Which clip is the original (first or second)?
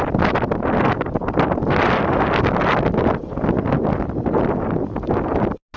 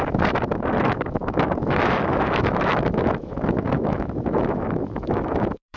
first